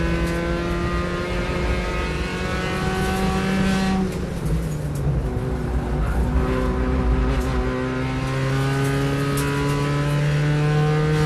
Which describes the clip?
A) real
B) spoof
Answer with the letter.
A